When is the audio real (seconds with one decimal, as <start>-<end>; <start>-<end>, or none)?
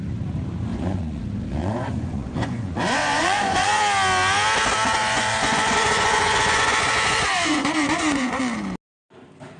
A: 0.0-0.7; 1.2-1.6; 3.8-5.0; 8.4-9.6